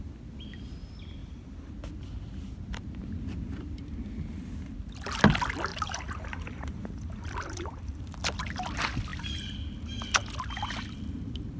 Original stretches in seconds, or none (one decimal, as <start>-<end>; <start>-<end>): 0.0-1.2; 1.7-5.7; 8.0-11.6